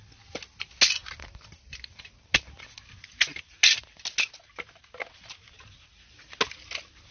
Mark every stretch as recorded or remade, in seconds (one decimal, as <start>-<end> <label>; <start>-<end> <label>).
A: 0.0-7.1 recorded